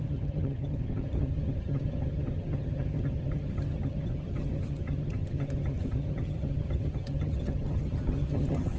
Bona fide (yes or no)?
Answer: no